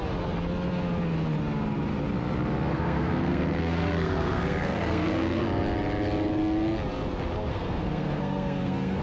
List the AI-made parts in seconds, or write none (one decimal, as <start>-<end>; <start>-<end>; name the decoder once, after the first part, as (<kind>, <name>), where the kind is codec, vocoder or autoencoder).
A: 2.7-5.4 (codec, SNAC); 7.5-9.0